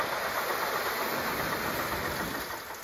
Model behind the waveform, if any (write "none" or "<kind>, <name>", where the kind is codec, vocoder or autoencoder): none